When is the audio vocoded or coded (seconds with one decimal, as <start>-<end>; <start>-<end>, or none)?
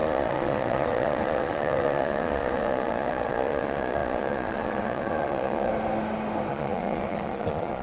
0.0-5.7; 6.5-7.8